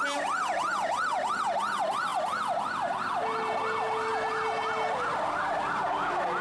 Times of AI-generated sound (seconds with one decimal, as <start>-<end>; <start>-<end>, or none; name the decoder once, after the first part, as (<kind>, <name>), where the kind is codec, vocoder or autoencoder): none